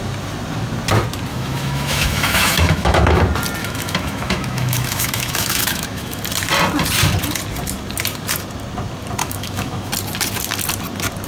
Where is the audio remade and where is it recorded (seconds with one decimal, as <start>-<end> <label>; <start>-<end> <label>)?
0.0-1.3 recorded; 1.3-3.2 remade; 3.2-3.6 recorded; 3.6-6.2 remade; 6.2-9.2 recorded; 9.2-9.9 remade; 9.9-11.3 recorded